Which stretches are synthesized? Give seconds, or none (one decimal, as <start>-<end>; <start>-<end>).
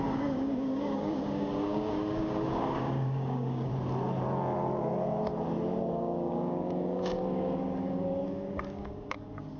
0.0-3.7; 5.9-9.6